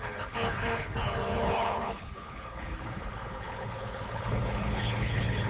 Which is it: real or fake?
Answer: fake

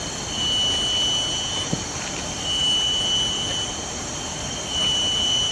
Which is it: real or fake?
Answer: real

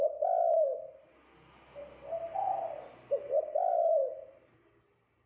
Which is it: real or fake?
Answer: real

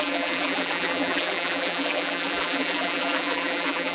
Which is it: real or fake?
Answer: fake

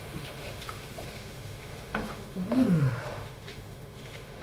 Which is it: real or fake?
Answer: fake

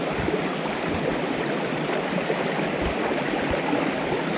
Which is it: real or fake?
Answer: real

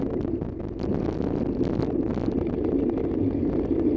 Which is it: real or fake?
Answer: real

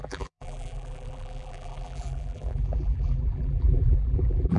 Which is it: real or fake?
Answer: fake